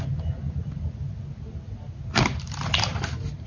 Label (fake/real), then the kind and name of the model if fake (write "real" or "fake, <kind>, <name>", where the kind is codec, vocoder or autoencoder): real